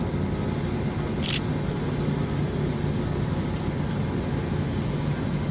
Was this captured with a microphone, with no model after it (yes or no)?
yes